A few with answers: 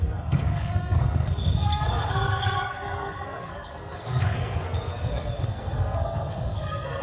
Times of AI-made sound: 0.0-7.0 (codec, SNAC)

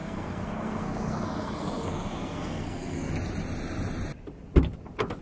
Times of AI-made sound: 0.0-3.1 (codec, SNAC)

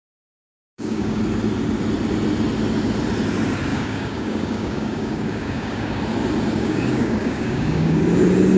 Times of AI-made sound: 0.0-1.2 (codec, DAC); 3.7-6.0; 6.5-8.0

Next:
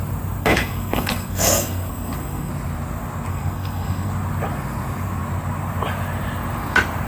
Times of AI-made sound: 0.4-2.5 (codec, SNAC); 3.3-4.1

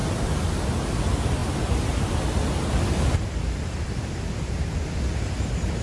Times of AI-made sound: none

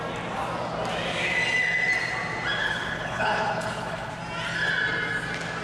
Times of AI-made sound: 2.6-4.1 (codec, HILCodec)